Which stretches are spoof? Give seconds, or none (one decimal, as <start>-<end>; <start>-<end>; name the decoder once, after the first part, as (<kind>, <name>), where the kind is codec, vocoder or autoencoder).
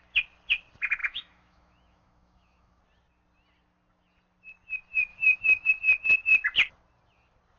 1.0-2.8 (autoencoder, DAC-VAE); 5.1-5.7